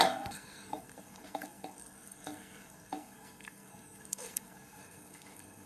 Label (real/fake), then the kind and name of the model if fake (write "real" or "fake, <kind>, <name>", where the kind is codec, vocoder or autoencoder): fake, codec, SNAC